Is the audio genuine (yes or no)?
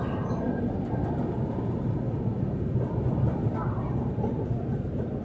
yes